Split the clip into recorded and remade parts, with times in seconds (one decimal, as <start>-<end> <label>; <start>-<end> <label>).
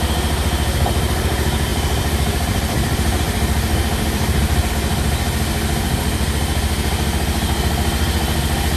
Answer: 0.0-1.7 recorded; 1.7-4.7 remade; 4.7-8.8 recorded